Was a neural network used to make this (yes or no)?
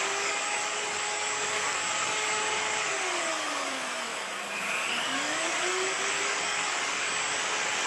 yes